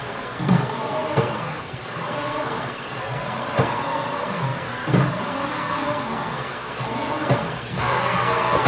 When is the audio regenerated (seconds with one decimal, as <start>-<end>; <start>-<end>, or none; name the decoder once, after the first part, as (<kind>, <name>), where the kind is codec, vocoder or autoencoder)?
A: 0.0-8.7 (codec, SNAC)